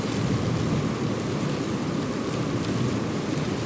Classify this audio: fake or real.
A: real